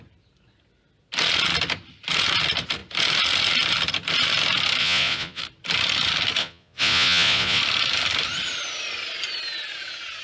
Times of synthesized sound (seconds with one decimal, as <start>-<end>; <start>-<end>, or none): 4.8-5.4; 6.4-7.6